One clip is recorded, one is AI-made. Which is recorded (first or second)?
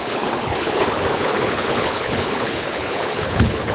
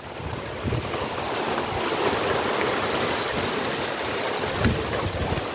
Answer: second